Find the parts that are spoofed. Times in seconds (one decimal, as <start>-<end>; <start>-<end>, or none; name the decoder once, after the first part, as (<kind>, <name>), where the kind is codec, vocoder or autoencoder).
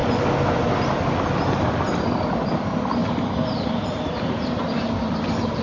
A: 3.0-4.8 (vocoder, BigVGAN v2)